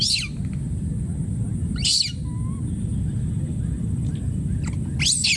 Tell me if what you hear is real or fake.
real